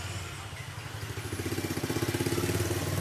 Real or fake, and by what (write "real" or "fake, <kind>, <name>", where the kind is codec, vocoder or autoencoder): real